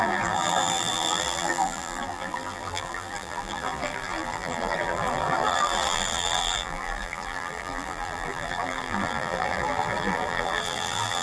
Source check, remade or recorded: remade